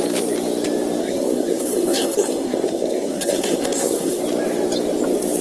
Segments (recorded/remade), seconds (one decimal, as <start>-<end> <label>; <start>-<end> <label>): 0.0-1.0 recorded; 1.0-4.2 remade; 4.2-5.4 recorded